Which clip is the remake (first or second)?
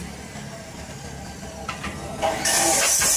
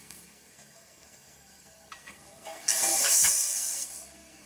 second